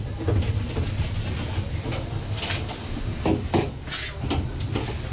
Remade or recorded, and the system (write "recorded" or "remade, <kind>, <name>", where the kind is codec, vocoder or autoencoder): recorded